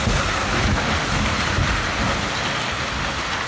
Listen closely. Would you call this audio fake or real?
real